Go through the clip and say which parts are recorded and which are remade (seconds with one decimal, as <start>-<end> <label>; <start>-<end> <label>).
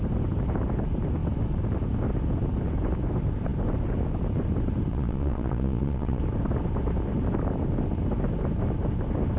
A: 0.0-4.9 recorded; 4.9-6.2 remade; 6.2-9.4 recorded